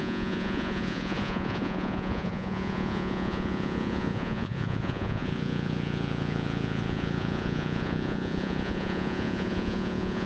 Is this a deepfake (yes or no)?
yes